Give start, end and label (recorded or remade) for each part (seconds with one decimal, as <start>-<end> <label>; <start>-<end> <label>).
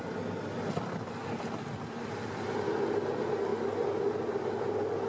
0.0-5.1 recorded